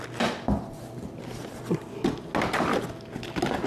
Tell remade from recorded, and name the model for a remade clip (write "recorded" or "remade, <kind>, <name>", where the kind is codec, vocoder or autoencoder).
recorded